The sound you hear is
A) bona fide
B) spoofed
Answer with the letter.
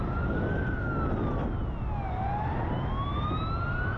A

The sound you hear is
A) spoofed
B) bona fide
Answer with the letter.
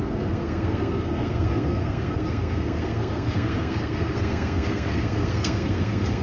A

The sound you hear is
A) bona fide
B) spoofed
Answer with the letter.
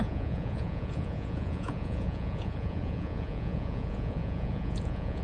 B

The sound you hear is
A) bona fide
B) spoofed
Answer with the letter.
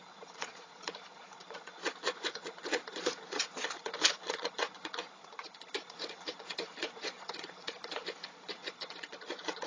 B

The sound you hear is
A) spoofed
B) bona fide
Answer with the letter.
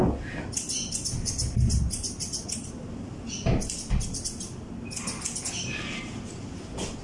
B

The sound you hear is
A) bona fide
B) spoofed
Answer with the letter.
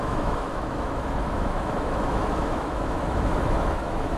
B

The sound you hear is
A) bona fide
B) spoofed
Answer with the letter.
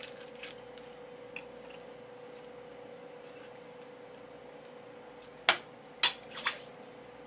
A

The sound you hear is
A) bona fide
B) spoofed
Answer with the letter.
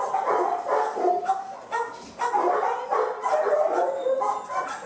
A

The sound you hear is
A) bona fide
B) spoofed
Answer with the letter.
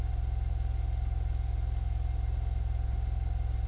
A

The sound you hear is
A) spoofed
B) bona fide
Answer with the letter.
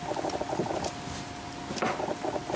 B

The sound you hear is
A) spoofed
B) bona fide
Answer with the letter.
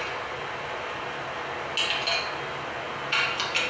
B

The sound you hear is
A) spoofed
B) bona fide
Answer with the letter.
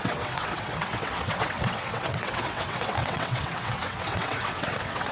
A